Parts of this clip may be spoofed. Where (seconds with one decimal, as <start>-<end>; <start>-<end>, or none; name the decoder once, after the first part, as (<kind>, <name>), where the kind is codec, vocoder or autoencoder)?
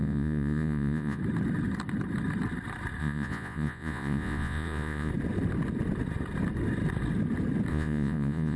0.0-1.2 (vocoder, Vocos); 3.0-5.1; 7.7-8.6